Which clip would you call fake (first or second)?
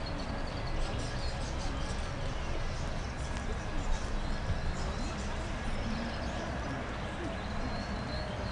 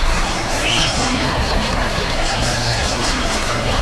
second